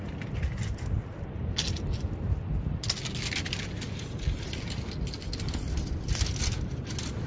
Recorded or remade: recorded